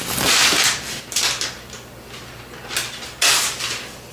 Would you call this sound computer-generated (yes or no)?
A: no